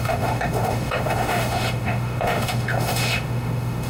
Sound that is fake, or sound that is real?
fake